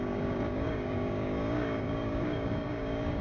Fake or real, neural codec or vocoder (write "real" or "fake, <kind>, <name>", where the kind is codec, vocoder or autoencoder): fake, codec, DAC